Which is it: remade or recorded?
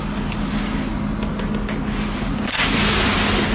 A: recorded